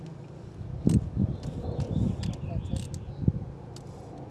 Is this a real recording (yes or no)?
yes